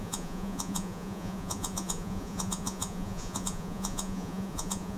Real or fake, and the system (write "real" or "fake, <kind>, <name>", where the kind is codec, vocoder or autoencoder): fake, vocoder, Vocos